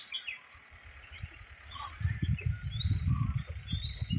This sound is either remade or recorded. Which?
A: recorded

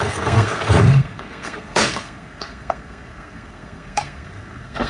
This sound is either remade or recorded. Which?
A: remade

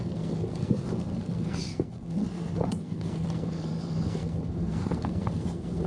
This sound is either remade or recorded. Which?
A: remade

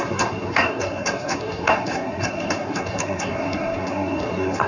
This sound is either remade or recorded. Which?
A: remade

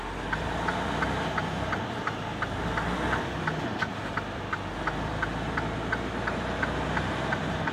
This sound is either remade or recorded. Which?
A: recorded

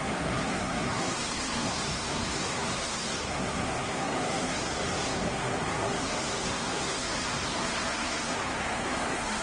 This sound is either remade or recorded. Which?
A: remade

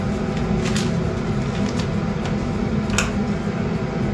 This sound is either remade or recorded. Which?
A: recorded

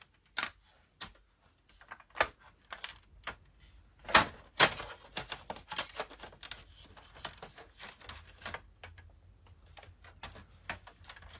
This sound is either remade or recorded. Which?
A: recorded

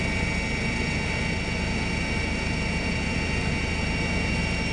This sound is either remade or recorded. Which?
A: recorded